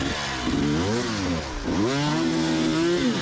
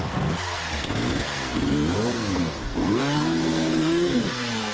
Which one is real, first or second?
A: first